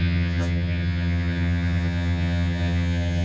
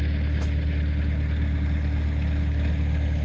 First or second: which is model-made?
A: first